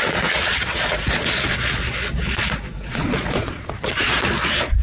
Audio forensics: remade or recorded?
remade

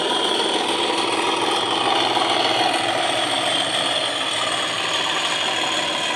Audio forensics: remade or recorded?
recorded